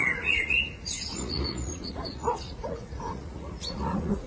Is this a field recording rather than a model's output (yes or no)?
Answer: no